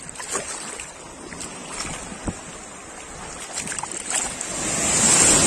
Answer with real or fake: real